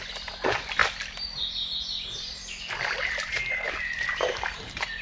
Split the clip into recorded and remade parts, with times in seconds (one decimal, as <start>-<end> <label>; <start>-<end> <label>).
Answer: 0.0-5.0 recorded